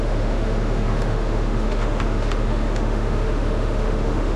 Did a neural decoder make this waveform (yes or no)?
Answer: yes